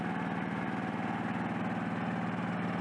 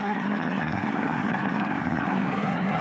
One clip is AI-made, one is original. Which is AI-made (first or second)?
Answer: second